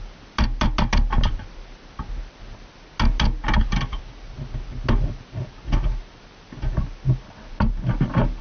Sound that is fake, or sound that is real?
real